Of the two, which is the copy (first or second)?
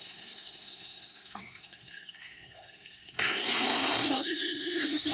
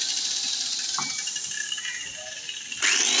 first